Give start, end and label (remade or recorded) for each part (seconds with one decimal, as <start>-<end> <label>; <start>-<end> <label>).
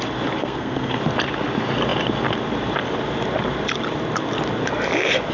0.0-0.4 recorded; 0.4-1.0 remade; 1.0-5.3 recorded